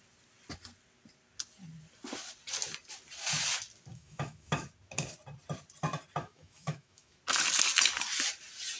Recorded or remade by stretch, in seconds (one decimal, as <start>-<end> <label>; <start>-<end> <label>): 0.0-3.9 recorded; 3.9-4.7 remade; 4.7-6.2 recorded; 6.2-7.2 remade; 7.2-8.8 recorded